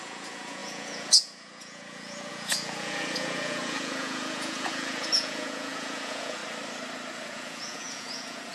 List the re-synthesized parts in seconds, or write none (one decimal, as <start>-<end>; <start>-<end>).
0.0-6.4; 7.2-8.5